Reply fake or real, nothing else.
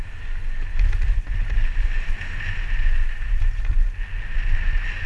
real